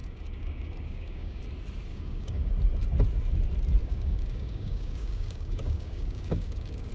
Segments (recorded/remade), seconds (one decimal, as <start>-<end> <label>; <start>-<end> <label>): 0.0-1.4 remade; 1.4-1.9 recorded; 1.9-2.5 remade; 2.5-3.8 recorded; 3.8-6.9 remade